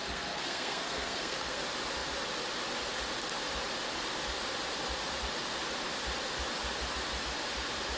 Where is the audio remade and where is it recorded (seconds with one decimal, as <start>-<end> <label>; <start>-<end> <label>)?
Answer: 0.0-1.6 remade; 1.6-8.0 recorded